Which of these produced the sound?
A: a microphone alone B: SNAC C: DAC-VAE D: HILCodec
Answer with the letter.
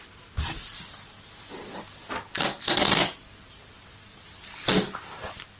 A